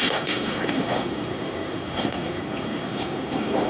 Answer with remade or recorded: remade